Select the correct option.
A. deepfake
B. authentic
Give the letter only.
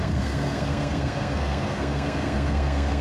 A